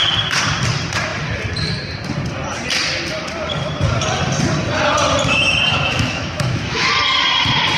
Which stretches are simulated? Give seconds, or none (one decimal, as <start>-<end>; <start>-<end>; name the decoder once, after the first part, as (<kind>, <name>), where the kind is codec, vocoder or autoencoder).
5.7-6.9 (autoencoder, DAC-VAE)